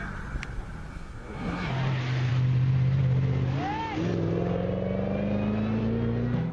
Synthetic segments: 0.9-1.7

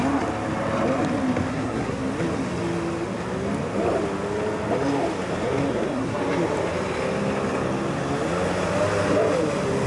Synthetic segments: 1.5-2.0; 5.7-6.2

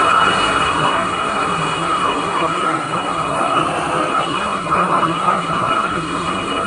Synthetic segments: 0.0-3.6; 4.1-6.7

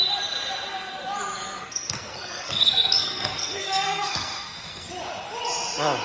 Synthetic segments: 1.4-4.9

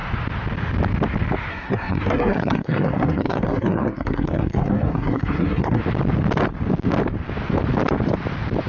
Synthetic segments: 1.5-5.8

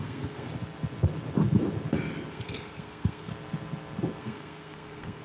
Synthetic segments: 0.0-0.5; 2.3-3.3; 4.2-5.2